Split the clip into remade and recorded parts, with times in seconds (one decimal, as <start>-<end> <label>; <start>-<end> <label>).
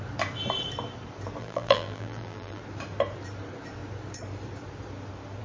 0.0-1.4 recorded; 1.4-2.6 remade; 2.6-5.4 recorded